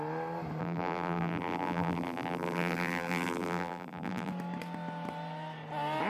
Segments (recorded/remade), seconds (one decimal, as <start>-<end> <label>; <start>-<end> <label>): 0.0-0.6 recorded; 0.6-4.3 remade; 4.3-6.1 recorded